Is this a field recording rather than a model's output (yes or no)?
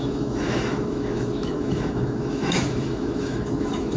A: no